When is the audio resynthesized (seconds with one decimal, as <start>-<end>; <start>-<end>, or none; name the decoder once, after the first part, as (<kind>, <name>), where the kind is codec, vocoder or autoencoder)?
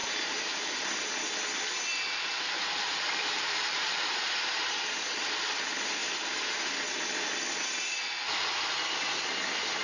0.0-1.1 (vocoder, BigVGAN v2); 1.9-4.3